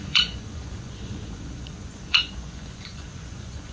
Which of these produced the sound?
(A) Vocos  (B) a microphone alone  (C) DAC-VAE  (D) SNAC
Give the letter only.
A